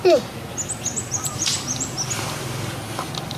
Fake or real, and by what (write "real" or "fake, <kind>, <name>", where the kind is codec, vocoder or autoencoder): real